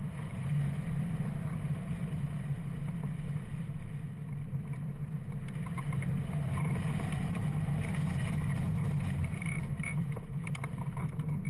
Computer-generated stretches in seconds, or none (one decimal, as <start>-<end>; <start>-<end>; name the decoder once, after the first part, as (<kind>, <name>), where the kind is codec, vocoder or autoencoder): 0.0-3.5 (vocoder, BigVGAN v2); 5.7-11.5